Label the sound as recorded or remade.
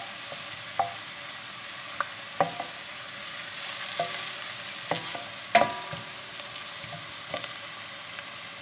recorded